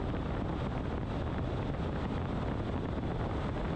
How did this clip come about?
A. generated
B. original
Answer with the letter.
B